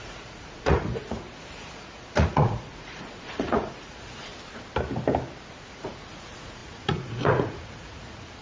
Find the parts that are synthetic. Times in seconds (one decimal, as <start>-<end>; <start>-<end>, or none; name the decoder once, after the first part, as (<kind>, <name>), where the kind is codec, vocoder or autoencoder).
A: 0.0-4.3 (vocoder, Vocos); 5.6-8.4